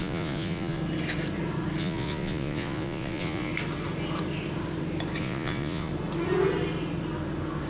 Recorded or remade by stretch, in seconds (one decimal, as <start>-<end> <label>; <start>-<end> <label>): 0.0-0.8 remade; 0.8-1.8 recorded; 1.8-3.5 remade; 3.5-5.2 recorded; 5.2-5.9 remade; 5.9-7.7 recorded